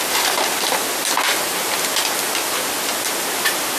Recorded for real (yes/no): yes